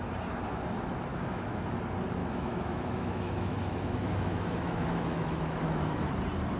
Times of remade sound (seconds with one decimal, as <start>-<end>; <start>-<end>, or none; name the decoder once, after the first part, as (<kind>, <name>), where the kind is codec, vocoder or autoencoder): 1.1-1.7 (autoencoder, DAC-VAE); 2.2-6.1